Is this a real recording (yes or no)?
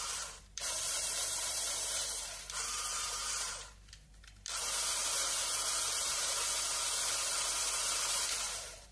no